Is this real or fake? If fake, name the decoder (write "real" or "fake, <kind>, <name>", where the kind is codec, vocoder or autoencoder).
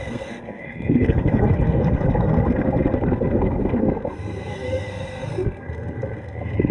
fake, codec, SNAC